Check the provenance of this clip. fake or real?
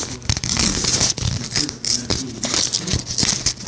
fake